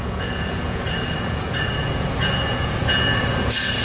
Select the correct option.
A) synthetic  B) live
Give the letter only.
A